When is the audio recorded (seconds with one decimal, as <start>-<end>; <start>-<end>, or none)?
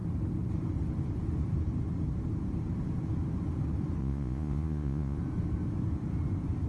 0.0-4.0; 5.2-6.7